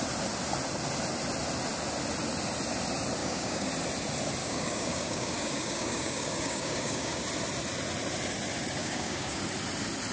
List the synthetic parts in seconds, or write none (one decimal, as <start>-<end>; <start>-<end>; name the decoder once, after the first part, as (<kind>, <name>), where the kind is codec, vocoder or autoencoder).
3.2-3.7 (codec, DAC); 4.4-7.2; 8.8-9.4